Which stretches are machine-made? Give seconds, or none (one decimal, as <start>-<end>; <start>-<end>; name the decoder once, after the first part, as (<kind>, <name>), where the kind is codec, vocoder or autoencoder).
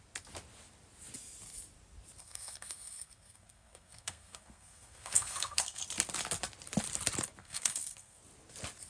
2.2-5.8 (codec, SNAC); 7.4-8.2